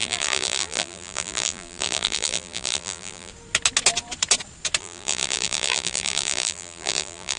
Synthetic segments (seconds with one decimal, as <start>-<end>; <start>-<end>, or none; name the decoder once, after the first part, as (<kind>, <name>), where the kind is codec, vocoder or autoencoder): 0.0-3.3 (vocoder, BigVGAN v2); 4.8-7.4